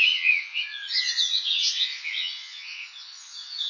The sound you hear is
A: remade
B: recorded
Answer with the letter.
A